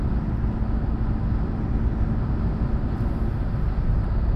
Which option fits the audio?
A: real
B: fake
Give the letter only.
A